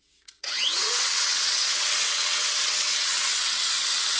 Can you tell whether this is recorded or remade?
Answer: remade